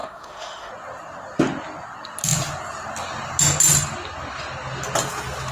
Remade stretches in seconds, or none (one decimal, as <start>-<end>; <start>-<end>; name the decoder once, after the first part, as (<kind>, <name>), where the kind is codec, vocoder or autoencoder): 0.0-0.7 (autoencoder, DAC-VAE)